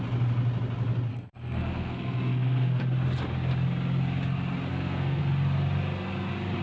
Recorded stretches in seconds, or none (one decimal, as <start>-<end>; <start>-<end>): 0.0-1.1; 2.8-4.7; 5.2-6.6